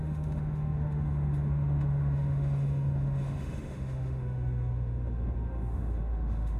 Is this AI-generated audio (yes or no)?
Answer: yes